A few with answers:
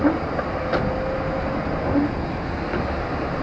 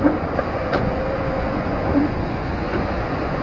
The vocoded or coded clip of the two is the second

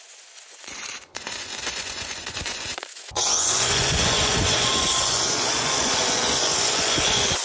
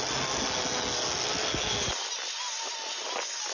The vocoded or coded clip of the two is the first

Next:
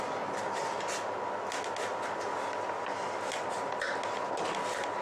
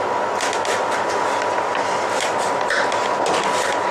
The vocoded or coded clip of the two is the second